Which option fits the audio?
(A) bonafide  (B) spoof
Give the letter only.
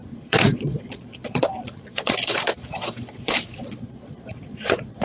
B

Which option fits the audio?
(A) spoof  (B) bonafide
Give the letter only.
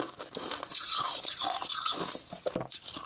B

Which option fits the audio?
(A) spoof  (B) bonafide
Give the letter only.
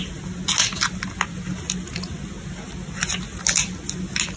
B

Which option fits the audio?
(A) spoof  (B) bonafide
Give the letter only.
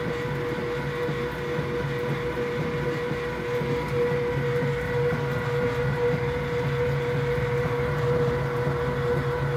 B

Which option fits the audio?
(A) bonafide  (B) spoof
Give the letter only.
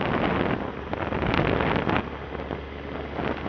A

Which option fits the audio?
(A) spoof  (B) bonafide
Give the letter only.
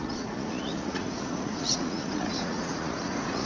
A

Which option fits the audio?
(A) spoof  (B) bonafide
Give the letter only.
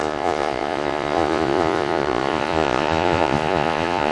A